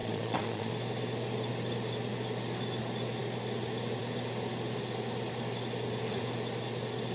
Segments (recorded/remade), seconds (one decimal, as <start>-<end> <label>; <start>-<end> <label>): 0.0-0.7 remade; 0.7-7.1 recorded